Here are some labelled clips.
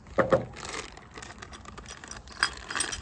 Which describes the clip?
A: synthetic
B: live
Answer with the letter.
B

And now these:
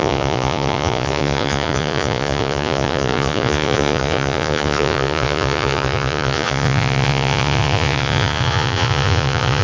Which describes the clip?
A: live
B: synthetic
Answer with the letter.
B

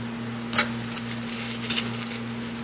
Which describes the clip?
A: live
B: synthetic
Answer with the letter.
A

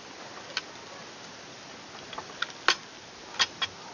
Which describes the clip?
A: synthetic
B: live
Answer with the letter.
B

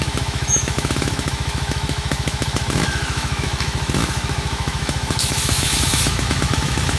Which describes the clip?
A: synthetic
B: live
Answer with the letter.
A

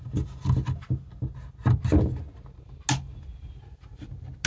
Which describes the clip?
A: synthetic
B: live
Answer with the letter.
B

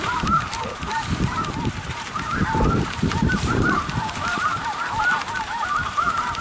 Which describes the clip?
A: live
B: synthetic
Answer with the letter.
B